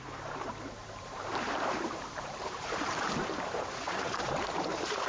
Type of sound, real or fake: fake